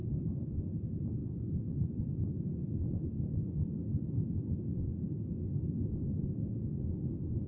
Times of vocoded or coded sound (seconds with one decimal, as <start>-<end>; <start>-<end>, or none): none